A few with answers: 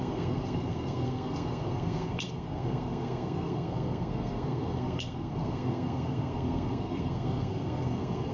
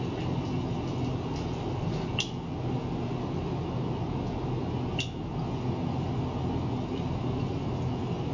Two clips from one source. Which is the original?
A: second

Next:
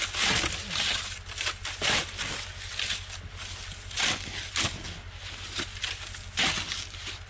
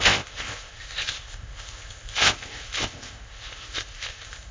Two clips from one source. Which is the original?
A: first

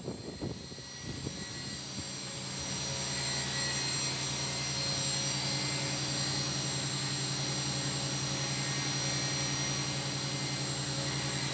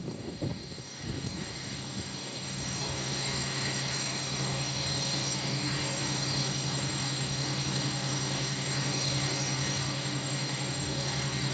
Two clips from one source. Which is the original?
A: first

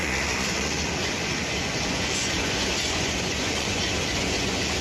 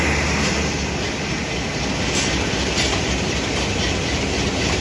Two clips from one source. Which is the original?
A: second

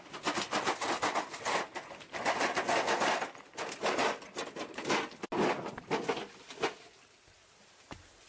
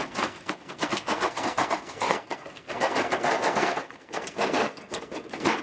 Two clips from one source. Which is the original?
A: first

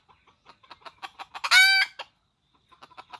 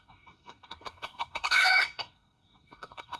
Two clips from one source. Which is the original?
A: first